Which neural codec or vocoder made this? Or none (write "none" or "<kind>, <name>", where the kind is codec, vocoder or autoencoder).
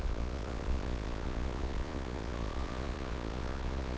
vocoder, Vocos